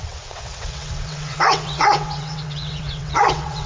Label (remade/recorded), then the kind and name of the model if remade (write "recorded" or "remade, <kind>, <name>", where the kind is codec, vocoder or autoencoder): remade, vocoder, WaveNeXt